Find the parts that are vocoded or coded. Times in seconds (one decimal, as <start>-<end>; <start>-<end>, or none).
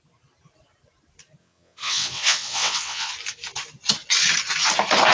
1.4-3.1